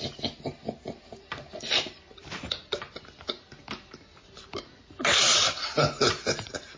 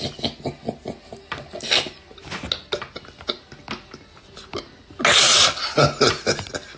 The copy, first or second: first